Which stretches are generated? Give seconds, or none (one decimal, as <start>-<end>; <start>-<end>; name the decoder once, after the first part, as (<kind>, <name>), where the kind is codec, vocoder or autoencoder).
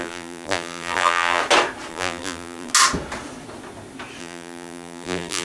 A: 0.0-1.4 (vocoder, BigVGAN v2); 1.9-2.7; 4.2-5.4